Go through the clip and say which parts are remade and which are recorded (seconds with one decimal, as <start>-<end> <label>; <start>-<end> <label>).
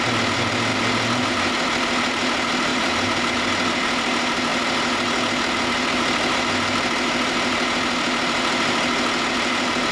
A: 0.0-0.7 recorded; 0.7-1.3 remade; 1.3-2.7 recorded; 2.7-3.3 remade; 3.3-9.9 recorded